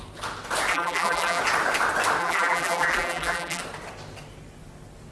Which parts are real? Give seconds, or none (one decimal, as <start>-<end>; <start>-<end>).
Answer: 0.0-0.7; 1.4-2.2; 3.6-5.1